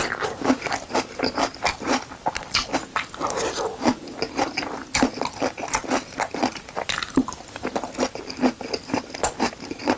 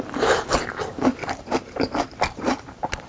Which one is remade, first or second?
second